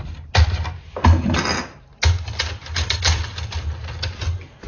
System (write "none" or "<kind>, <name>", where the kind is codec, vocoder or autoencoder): none